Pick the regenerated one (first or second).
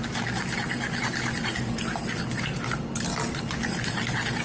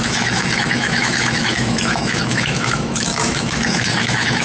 second